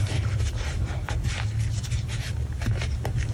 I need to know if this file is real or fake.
real